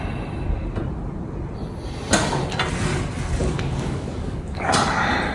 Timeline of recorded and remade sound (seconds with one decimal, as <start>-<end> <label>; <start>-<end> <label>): 0.0-3.4 recorded; 3.4-4.7 remade; 4.7-5.3 recorded